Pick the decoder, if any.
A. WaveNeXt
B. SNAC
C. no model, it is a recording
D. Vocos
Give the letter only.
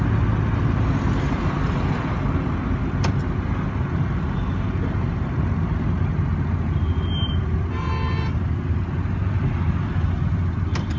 C